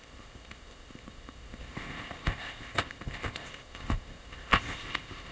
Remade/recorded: remade